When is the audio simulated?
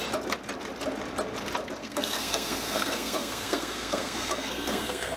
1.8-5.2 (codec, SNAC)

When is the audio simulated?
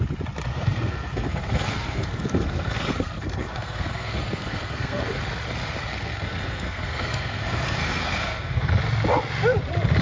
0.5-5.2 (codec, SNAC); 5.9-8.7